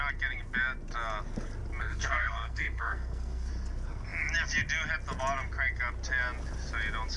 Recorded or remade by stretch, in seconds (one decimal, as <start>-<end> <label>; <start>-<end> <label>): 0.0-1.8 recorded; 1.8-3.5 remade; 3.5-7.2 recorded